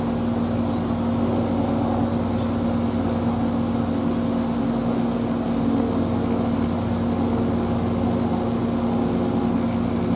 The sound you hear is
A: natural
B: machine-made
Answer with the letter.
A